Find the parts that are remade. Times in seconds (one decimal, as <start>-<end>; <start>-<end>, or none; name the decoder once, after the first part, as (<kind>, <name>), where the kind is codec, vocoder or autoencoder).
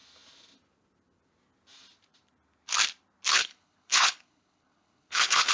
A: 3.3-5.5 (codec, HILCodec)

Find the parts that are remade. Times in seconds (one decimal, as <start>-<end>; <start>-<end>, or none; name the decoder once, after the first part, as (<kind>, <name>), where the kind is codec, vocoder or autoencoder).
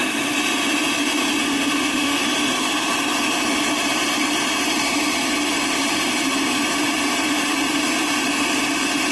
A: 1.4-2.3 (autoencoder, DAC-VAE)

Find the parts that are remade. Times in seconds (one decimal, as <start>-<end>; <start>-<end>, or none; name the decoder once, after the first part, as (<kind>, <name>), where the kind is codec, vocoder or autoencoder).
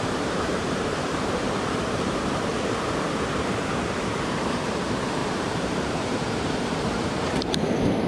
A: 0.0-2.5 (vocoder, BigVGAN v2); 3.1-8.1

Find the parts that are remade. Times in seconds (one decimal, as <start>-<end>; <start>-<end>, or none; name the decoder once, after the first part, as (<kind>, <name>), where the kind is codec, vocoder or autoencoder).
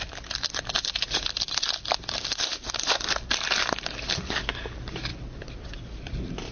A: 5.1-6.1 (vocoder, BigVGAN v2)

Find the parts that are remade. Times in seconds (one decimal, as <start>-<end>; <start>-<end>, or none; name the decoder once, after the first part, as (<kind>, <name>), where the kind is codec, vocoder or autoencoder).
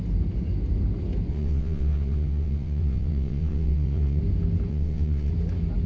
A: 1.3-4.2 (vocoder, WaveNeXt); 4.7-5.3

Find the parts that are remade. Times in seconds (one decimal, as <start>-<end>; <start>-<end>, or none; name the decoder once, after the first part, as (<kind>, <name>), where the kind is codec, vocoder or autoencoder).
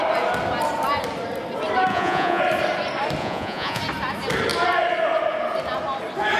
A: 1.9-2.4 (vocoder, Vocos); 3.2-3.8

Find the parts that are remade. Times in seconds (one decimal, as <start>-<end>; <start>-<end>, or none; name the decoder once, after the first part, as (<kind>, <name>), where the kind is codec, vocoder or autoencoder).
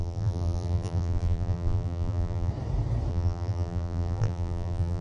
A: 0.0-2.5 (vocoder, BigVGAN v2); 3.1-5.0